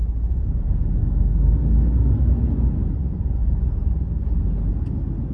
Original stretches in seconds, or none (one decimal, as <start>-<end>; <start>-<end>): 0.0-1.0; 2.3-5.3